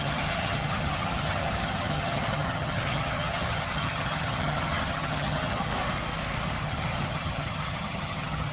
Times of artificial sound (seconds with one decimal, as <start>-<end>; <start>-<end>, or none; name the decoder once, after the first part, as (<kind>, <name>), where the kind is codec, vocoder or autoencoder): 0.0-5.7 (vocoder, HiFi-GAN); 6.6-8.5